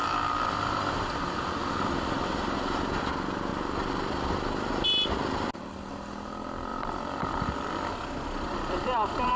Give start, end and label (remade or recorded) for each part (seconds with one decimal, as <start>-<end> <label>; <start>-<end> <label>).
0.0-3.0 remade; 3.0-6.7 recorded; 6.7-9.4 remade